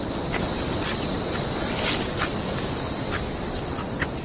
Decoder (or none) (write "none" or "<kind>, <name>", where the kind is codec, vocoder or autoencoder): none